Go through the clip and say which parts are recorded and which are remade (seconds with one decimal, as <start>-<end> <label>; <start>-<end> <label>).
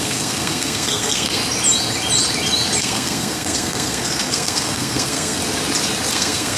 0.0-1.4 remade; 1.4-2.8 recorded; 2.8-5.4 remade; 5.4-6.1 recorded; 6.1-6.6 remade